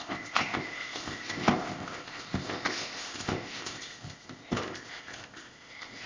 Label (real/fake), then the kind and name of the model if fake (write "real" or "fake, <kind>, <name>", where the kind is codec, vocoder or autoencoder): fake, codec, ZipCodec